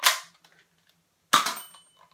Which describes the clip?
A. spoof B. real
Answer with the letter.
B